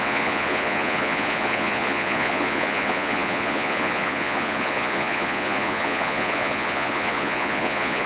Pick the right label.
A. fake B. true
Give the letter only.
A